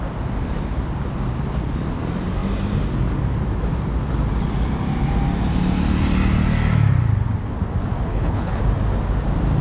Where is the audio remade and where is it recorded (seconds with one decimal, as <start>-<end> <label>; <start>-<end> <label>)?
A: 0.0-8.1 recorded; 8.1-8.6 remade; 8.6-9.6 recorded